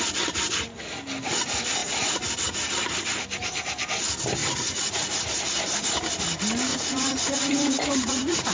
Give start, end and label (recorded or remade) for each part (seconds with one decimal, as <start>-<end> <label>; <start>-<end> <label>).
0.0-4.4 recorded; 4.4-5.2 remade; 5.2-6.7 recorded; 6.7-8.5 remade